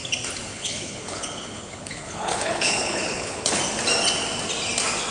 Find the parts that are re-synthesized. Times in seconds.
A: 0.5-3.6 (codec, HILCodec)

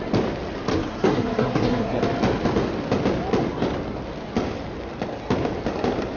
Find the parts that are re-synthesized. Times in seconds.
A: 0.7-2.0 (codec, SNAC)

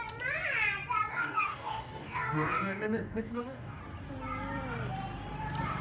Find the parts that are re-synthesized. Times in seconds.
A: 1.1-3.8 (codec, DAC)

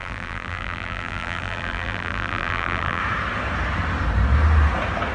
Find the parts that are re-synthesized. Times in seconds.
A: 0.0-3.0 (vocoder, BigVGAN v2)

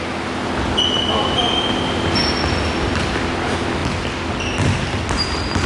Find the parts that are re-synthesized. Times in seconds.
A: 2.2-3.1 (vocoder, BigVGAN v2)